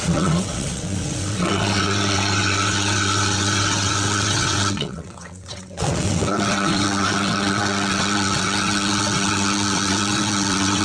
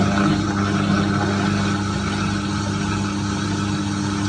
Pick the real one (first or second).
second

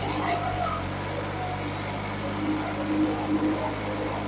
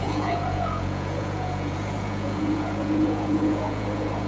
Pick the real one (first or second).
first